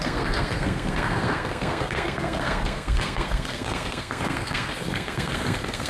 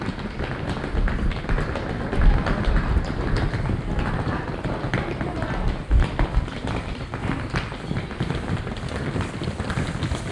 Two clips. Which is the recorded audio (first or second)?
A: second